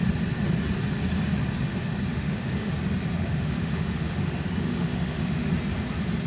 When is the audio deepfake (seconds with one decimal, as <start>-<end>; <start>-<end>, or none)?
2.1-2.7; 3.1-5.5